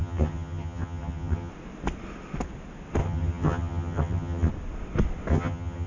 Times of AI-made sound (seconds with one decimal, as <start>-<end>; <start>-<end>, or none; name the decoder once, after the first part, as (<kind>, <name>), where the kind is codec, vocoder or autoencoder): 0.0-1.5 (vocoder, HiFi-GAN); 3.0-4.5; 5.3-5.9